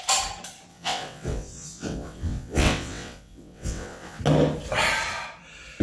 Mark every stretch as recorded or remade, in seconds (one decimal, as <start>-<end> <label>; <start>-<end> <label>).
0.0-0.7 recorded; 0.7-4.2 remade; 4.2-5.8 recorded